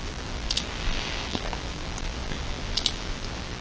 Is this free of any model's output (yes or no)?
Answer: no